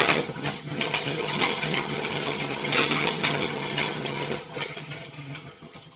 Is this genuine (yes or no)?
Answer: no